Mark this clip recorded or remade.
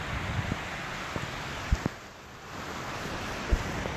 recorded